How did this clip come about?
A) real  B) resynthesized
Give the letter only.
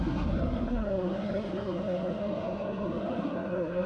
B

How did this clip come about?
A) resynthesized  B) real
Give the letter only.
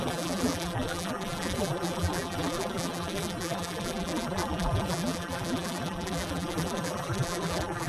A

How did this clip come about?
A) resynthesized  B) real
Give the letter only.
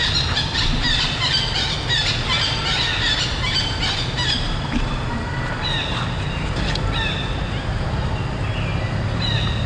B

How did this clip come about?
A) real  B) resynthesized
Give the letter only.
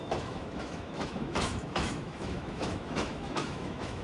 B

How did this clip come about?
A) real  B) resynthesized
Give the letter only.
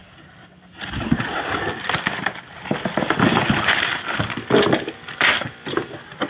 A